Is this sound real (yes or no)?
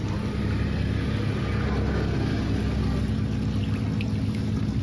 yes